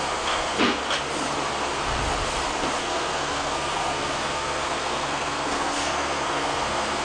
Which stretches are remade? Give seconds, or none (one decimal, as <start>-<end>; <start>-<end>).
0.0-0.8; 2.8-7.0